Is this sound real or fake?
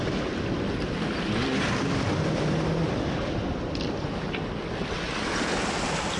real